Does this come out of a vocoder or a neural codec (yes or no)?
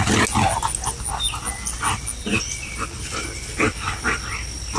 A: no